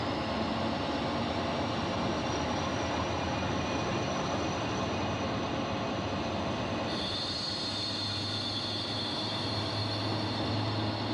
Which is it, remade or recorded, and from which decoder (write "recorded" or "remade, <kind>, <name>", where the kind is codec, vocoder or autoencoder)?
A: recorded